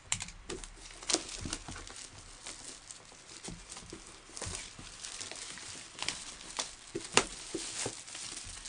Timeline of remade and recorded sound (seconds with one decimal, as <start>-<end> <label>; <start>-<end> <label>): 0.0-0.8 remade; 0.8-5.3 recorded; 5.3-7.3 remade; 7.3-8.2 recorded; 8.2-8.7 remade

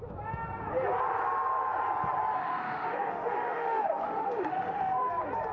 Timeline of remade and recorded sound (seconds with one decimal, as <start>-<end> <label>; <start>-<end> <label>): 0.0-2.4 recorded; 2.4-5.1 remade; 5.1-5.5 recorded

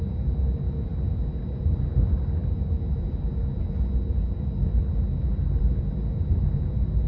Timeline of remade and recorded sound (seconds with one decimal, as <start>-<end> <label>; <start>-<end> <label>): 0.0-7.1 recorded

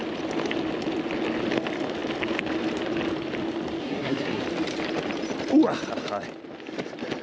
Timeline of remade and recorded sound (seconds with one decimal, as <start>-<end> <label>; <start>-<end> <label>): 0.0-3.8 recorded; 3.8-4.4 remade; 4.4-7.2 recorded

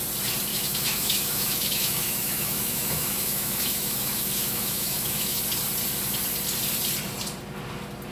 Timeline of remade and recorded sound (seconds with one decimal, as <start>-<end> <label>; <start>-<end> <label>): 0.0-0.5 recorded; 0.5-5.4 remade; 5.4-8.1 recorded

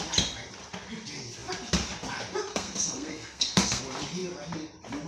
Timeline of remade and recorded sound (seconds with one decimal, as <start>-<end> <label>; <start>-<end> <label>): 0.0-2.5 recorded; 2.5-3.8 remade; 3.8-5.1 recorded

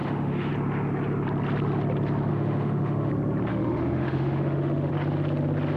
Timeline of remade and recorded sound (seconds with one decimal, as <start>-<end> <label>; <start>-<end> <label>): 0.0-0.5 remade; 0.5-2.3 recorded; 2.3-3.1 remade; 3.1-3.5 recorded; 3.5-4.9 remade; 4.9-5.8 recorded

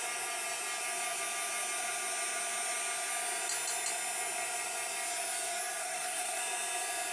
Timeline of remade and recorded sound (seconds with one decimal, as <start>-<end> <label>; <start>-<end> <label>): 0.0-5.8 recorded; 5.8-6.4 remade; 6.4-7.1 recorded